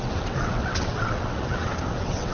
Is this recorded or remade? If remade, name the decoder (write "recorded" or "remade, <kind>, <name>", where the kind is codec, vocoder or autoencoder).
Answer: remade, vocoder, WaveNeXt